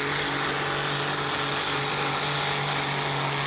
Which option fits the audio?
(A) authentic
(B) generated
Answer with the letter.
A